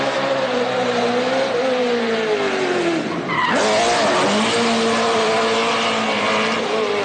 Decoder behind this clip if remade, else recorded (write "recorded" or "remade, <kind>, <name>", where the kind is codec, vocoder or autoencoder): recorded